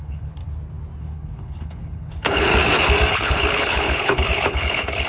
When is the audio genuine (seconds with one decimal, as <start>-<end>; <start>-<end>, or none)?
0.4-1.0; 2.5-3.1